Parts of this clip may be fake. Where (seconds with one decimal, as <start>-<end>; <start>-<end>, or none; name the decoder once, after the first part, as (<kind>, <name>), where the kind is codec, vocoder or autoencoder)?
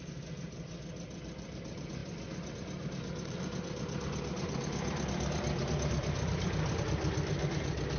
0.0-8.0 (vocoder, BigVGAN v2)